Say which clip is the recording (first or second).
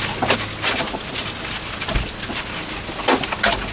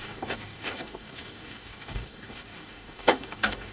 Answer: first